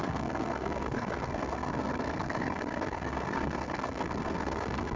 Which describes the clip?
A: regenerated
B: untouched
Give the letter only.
A